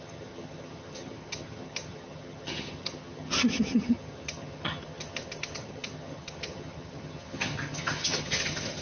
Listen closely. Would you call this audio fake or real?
fake